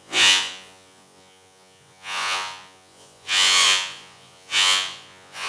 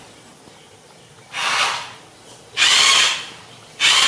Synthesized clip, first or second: first